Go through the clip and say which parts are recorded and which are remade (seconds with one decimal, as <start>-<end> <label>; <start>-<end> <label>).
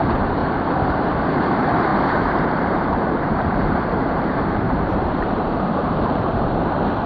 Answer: 0.0-0.4 remade; 0.4-1.5 recorded; 1.5-7.1 remade